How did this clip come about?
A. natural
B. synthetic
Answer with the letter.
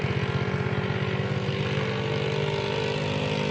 A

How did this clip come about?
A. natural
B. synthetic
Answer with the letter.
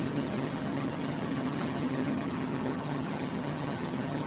B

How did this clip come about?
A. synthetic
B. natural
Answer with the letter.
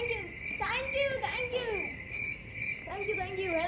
B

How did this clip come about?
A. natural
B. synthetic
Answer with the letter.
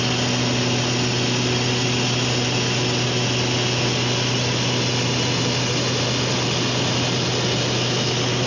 A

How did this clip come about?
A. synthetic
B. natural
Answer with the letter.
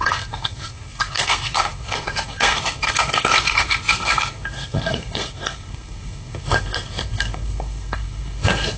A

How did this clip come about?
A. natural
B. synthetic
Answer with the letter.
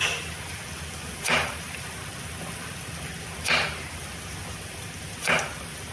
A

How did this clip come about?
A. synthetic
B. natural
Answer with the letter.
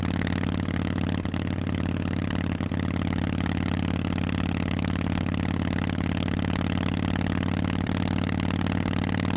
B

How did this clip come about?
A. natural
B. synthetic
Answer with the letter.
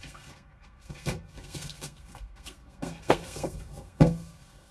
B